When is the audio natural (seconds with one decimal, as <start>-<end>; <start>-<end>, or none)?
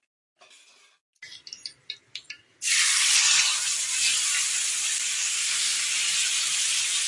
0.0-5.2; 5.8-7.1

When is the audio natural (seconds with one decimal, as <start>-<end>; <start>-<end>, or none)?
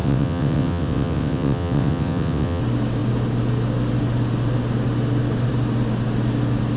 2.6-6.8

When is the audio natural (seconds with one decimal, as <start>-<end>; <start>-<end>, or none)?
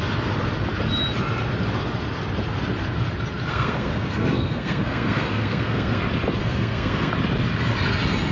0.0-3.5; 6.0-6.4; 7.1-8.3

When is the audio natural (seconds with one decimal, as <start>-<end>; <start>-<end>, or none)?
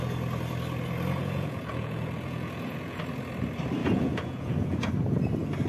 0.0-1.2; 3.0-3.8; 4.9-5.7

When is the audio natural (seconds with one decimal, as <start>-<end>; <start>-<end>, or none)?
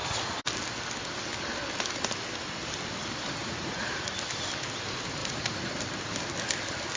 0.0-3.4; 4.1-5.2; 5.7-7.0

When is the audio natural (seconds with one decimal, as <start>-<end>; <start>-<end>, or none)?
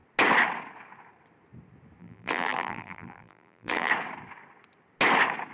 0.0-2.0; 3.9-5.5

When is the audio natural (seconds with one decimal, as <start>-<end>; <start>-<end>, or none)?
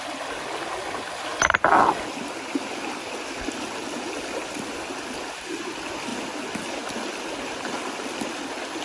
0.0-8.8